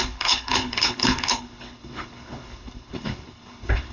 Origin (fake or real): fake